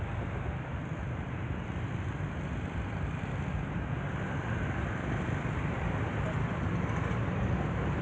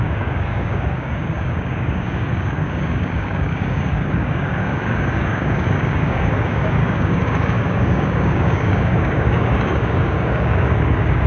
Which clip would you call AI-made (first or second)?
second